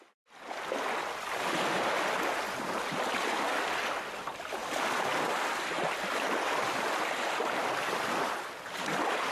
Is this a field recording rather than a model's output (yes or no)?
yes